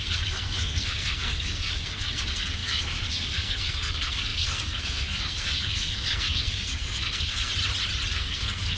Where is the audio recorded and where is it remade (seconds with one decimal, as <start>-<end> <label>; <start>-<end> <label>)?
0.0-7.5 remade; 7.5-8.1 recorded; 8.1-8.8 remade